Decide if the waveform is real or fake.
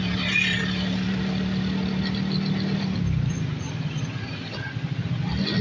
real